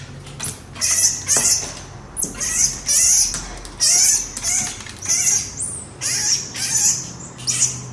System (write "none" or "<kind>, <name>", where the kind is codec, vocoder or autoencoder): none